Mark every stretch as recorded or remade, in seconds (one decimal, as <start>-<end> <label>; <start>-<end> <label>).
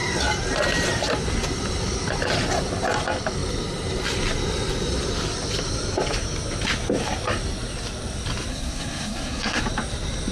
0.0-8.5 recorded; 8.5-9.6 remade; 9.6-10.3 recorded